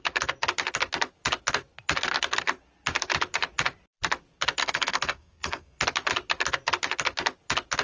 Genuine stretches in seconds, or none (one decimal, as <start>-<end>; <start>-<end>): 0.0-4.6; 5.8-7.8